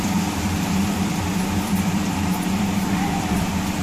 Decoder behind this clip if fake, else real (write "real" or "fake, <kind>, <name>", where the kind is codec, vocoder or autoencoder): fake, vocoder, BigVGAN v2